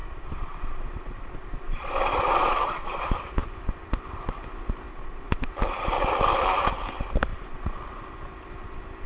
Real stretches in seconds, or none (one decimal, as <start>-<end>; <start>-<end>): 3.0-4.9; 5.5-7.3; 7.8-9.1